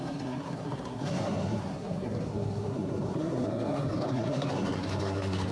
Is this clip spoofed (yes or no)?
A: yes